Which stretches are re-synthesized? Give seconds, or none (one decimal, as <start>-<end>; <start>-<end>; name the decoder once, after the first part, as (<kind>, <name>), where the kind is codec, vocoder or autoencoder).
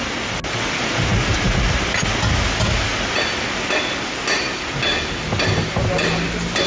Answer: none